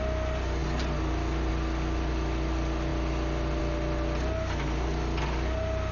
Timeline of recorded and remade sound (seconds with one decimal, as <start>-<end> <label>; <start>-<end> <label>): 0.0-5.9 recorded